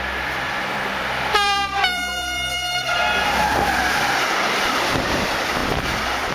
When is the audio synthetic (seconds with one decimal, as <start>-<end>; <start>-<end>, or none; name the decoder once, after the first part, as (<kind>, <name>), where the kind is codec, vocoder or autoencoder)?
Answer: 0.0-6.3 (vocoder, BigVGAN v2)